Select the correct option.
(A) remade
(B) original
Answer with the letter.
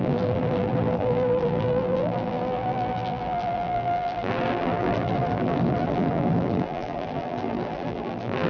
A